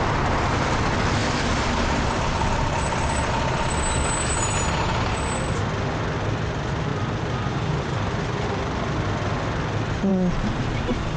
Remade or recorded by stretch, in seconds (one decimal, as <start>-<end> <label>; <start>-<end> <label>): 0.0-6.9 recorded; 6.9-8.2 remade; 8.2-10.1 recorded; 10.1-10.6 remade; 10.6-11.2 recorded